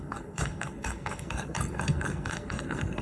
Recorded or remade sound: remade